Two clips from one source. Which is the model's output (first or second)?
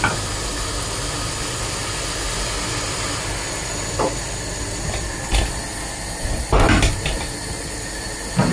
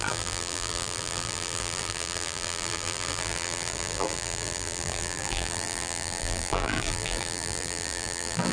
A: second